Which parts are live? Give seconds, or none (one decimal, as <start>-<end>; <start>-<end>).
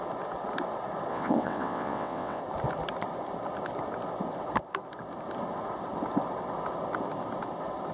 0.0-1.1; 2.4-7.9